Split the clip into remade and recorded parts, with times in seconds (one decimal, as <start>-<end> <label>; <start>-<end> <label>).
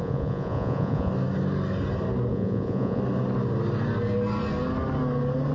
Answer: 0.0-1.1 remade; 1.1-2.3 recorded; 2.3-3.0 remade; 3.0-5.5 recorded